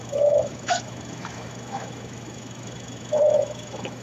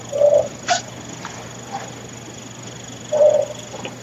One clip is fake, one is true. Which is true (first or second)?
second